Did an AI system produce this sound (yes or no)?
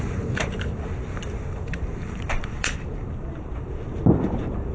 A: yes